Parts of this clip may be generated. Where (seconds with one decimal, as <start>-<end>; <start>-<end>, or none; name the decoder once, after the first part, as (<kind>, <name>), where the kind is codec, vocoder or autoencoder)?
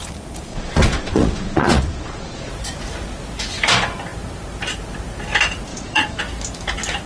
0.5-2.5 (vocoder, Vocos); 5.7-6.2